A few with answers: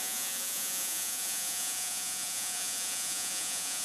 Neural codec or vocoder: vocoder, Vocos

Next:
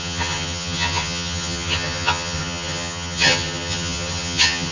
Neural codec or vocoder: vocoder, HiFi-GAN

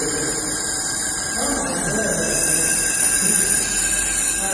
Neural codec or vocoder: none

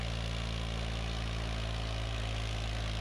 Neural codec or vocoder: none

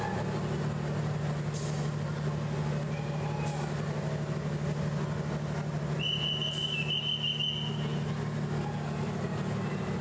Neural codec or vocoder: none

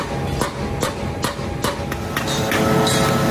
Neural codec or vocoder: none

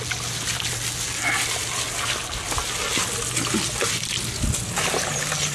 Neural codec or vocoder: none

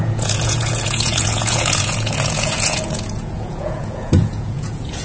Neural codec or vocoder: vocoder, Vocos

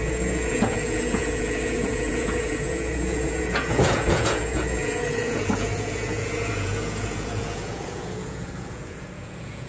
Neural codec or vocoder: vocoder, Vocos